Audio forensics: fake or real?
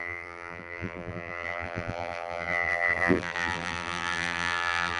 fake